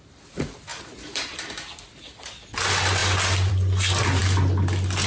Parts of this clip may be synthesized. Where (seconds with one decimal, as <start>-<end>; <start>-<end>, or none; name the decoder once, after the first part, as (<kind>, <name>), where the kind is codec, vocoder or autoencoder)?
none